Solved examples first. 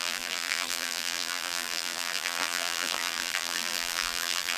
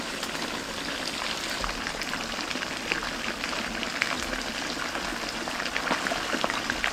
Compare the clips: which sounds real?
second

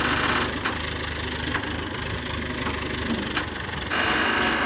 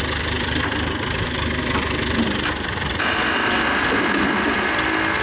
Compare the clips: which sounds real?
first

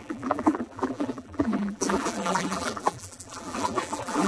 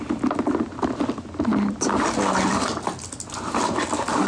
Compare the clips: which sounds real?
second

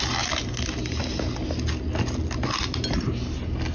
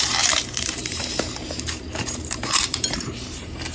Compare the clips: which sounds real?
first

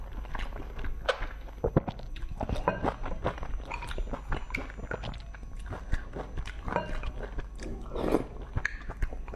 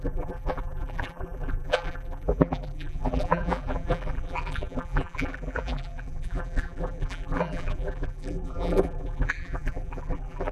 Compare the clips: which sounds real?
first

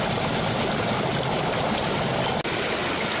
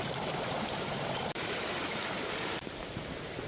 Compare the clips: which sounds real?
first